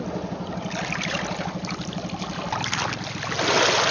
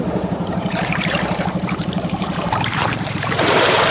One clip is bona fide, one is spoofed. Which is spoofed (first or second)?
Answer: second